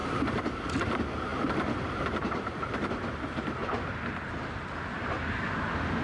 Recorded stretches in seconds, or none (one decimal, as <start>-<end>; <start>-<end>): 0.0-6.0